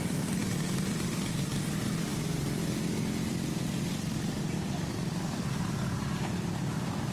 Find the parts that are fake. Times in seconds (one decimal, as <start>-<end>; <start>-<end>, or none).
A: 0.0-7.1